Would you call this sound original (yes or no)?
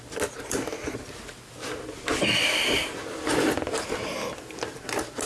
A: yes